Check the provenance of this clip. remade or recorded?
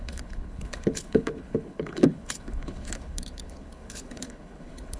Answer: remade